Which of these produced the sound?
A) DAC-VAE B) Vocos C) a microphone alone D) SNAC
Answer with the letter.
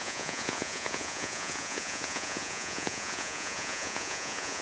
B